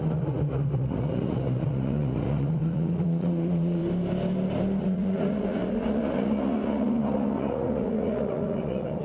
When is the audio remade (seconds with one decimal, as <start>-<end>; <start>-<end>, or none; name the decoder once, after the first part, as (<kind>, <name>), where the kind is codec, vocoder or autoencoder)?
0.0-3.8 (vocoder, Vocos); 4.8-9.0